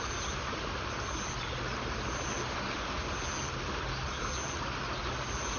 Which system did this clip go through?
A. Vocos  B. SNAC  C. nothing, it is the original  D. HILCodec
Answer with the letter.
C